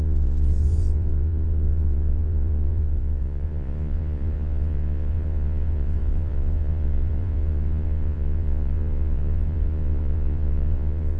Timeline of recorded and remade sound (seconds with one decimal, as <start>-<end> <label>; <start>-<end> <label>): 0.0-11.2 remade